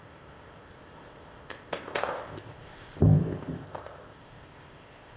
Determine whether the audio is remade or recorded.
remade